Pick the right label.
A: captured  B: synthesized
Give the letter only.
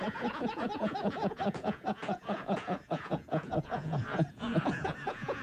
B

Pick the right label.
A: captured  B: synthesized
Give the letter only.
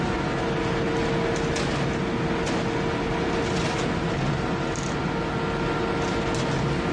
A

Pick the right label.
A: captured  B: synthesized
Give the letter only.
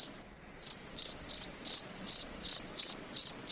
B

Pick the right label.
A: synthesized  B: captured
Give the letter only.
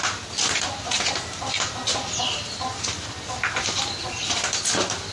B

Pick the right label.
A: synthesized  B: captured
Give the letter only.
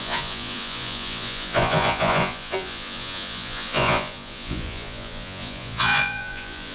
A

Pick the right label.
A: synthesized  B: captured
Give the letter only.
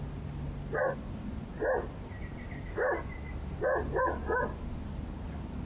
B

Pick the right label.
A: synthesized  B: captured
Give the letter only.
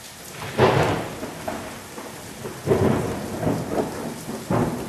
B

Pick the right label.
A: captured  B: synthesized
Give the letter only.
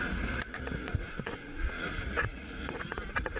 B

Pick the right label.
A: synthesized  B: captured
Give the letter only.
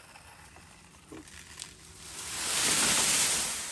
B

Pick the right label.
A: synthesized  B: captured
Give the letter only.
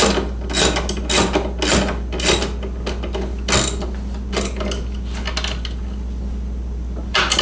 B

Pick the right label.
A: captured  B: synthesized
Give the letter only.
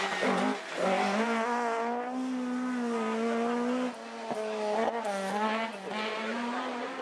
A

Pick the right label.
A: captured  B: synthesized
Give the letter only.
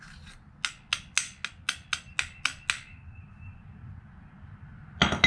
A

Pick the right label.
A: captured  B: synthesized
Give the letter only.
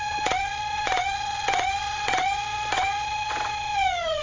B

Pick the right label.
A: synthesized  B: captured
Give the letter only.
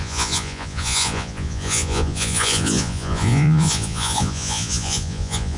A